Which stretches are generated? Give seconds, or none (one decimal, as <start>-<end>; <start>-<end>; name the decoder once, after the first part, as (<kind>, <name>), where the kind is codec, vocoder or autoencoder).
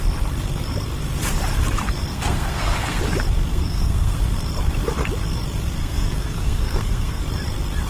2.1-3.0 (codec, SNAC); 3.5-4.2; 5.8-7.2